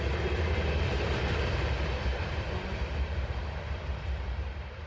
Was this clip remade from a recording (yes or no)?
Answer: yes